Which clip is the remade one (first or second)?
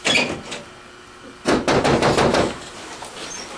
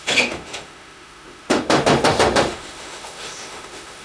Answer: second